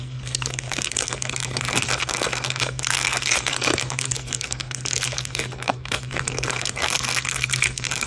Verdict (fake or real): fake